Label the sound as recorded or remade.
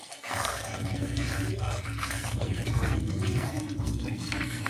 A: remade